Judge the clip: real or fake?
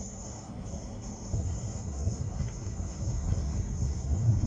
fake